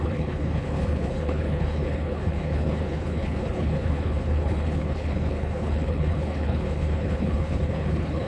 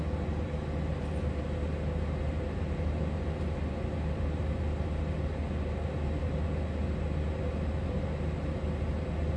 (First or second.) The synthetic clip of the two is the first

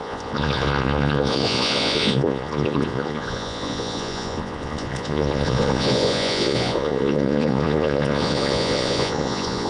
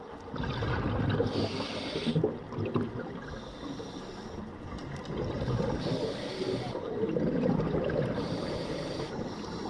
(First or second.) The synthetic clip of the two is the first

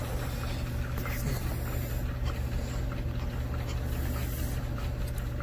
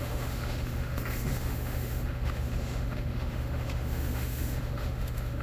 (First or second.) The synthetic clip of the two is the second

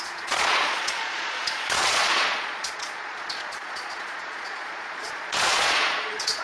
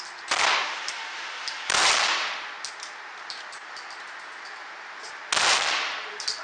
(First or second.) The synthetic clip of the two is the first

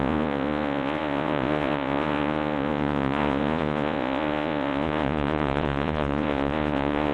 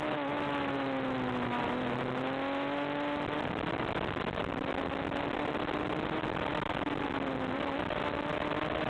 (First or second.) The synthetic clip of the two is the first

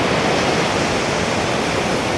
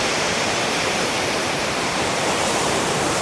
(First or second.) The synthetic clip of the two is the second